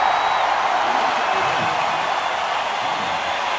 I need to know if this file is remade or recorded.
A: recorded